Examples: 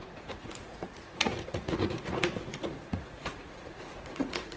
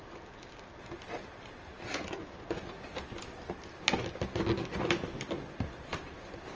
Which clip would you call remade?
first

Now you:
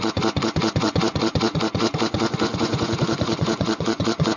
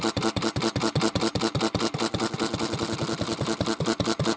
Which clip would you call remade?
first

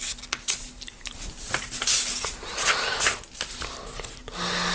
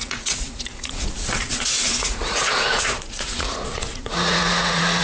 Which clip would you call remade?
second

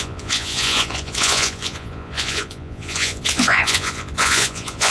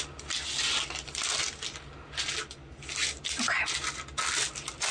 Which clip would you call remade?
first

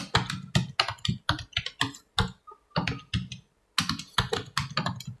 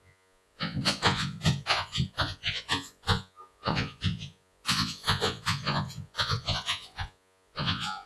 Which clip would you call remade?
second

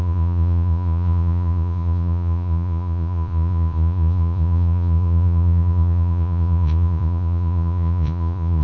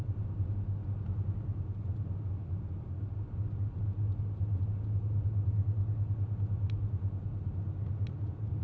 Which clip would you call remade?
first